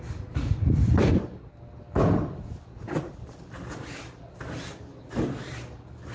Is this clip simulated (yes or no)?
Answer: no